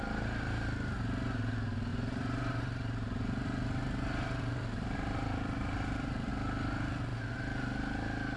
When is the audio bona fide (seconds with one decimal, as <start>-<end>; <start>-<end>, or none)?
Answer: 0.0-1.9; 6.3-8.4